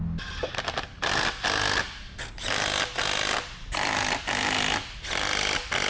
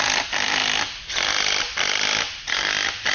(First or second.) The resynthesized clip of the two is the second